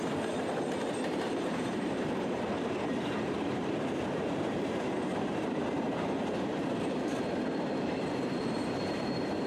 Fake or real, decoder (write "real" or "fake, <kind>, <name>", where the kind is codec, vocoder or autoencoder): fake, vocoder, BigVGAN v2